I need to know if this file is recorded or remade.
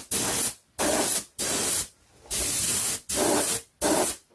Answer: recorded